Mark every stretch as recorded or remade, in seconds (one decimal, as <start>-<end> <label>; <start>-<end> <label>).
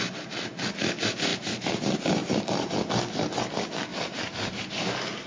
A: 0.0-2.2 recorded; 2.2-2.7 remade; 2.7-3.9 recorded; 3.9-4.6 remade; 4.6-5.3 recorded